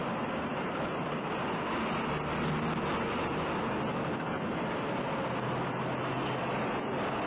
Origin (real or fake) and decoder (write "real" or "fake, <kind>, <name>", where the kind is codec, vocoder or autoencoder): real